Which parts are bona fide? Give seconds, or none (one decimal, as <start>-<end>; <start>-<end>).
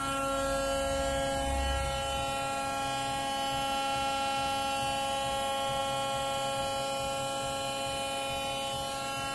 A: 0.0-9.3